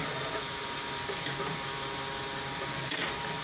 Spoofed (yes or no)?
no